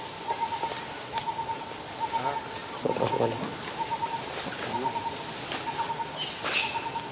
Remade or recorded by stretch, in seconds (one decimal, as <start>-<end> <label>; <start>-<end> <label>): 0.0-7.1 recorded